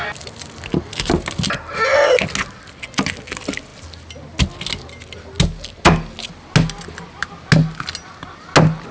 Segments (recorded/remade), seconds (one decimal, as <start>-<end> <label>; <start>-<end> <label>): 0.0-8.9 recorded